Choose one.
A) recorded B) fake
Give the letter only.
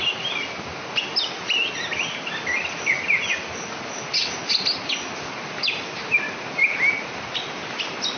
A